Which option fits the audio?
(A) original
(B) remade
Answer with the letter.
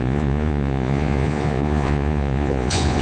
B